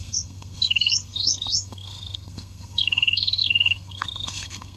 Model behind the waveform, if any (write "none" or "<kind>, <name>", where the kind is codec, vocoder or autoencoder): codec, SNAC